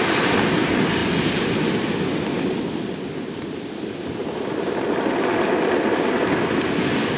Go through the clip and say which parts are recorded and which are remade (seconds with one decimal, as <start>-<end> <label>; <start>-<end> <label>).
0.0-7.2 recorded